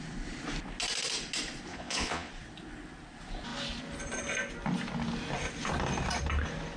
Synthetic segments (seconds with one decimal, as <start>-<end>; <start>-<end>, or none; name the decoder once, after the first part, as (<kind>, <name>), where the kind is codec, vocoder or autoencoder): 1.7-2.3 (vocoder, Vocos)

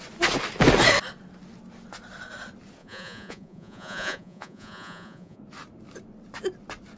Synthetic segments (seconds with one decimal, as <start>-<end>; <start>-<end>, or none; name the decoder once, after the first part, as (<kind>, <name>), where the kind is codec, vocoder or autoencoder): 2.8-5.4 (vocoder, Vocos)

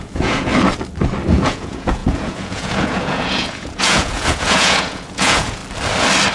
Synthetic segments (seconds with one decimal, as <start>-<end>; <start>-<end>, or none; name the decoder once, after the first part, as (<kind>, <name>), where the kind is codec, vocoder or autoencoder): 0.0-0.5 (vocoder, Vocos); 1.3-5.6

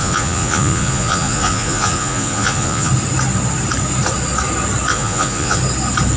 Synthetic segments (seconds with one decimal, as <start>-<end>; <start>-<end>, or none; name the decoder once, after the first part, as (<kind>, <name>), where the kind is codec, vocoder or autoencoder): 0.0-2.9 (vocoder, Vocos); 4.9-5.6

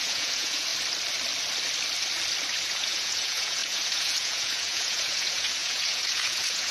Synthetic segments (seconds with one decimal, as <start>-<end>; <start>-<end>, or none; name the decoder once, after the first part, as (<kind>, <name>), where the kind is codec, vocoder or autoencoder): 0.0-0.7 (vocoder, Vocos); 2.6-6.7